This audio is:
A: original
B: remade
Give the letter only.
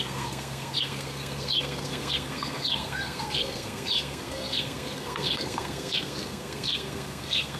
B